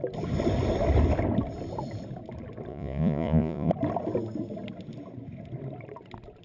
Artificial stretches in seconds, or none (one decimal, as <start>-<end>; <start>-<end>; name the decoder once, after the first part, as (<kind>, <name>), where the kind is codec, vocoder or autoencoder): 2.7-3.7 (vocoder, Vocos)